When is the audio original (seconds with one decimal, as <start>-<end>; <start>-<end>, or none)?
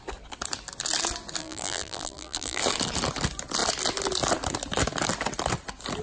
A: 0.0-1.4; 2.6-6.0